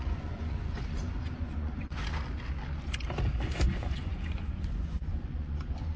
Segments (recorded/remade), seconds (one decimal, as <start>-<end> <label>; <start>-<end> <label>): 0.0-2.0 remade; 2.0-3.6 recorded; 3.6-6.0 remade